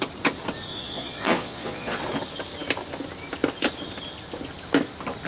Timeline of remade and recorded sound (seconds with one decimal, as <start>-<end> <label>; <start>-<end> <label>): 0.0-0.7 recorded; 0.7-2.0 remade; 2.0-5.3 recorded